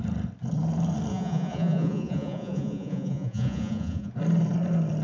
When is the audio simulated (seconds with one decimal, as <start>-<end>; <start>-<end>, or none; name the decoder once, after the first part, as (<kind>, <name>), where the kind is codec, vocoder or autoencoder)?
1.1-4.1 (vocoder, Vocos)